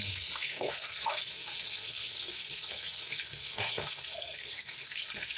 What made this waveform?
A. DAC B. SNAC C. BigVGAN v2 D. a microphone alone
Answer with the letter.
B